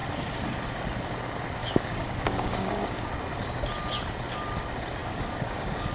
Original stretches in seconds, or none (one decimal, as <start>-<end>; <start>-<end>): 0.0-1.6; 3.1-5.0